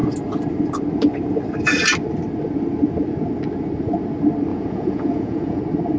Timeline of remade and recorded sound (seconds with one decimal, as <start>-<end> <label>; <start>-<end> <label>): 0.0-4.5 recorded; 4.5-5.6 remade; 5.6-6.0 recorded